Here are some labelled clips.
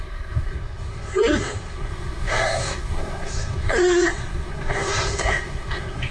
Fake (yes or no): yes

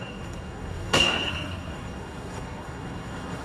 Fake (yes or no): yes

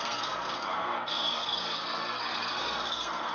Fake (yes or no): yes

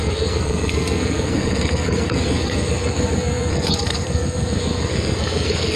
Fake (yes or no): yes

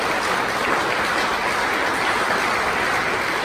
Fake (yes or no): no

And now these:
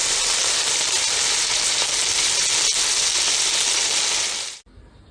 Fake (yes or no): no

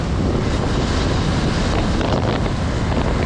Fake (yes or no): no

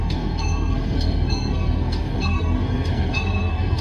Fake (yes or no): yes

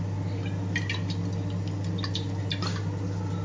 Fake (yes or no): no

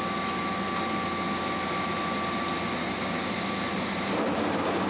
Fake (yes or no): no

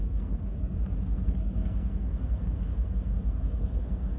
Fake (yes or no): yes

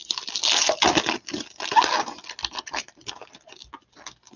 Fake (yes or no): no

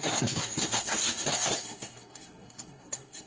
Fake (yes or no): yes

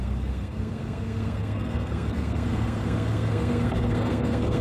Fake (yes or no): yes